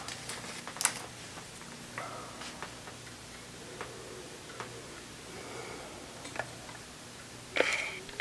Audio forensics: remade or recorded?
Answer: recorded